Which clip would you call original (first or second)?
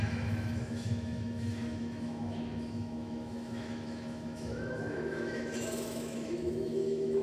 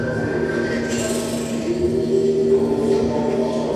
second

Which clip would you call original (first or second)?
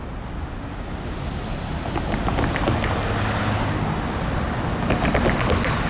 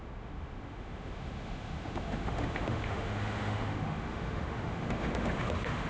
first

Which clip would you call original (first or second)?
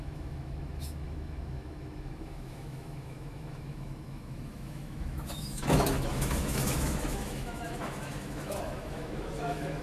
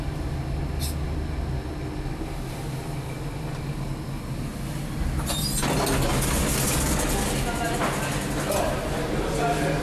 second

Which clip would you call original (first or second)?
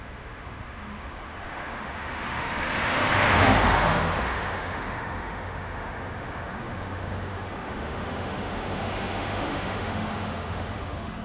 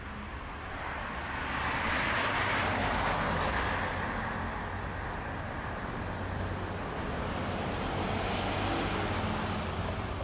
second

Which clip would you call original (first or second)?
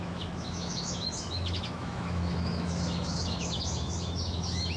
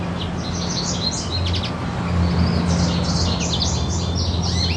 second